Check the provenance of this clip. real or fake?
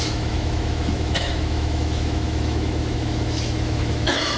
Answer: fake